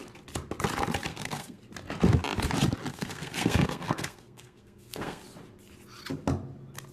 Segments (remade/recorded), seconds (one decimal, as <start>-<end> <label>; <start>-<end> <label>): 0.0-1.1 recorded; 1.1-1.6 remade; 1.6-2.9 recorded; 2.9-5.2 remade; 5.2-6.9 recorded